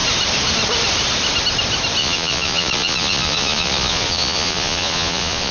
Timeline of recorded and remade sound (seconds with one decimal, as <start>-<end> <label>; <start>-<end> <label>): 0.0-2.0 recorded; 2.0-5.5 remade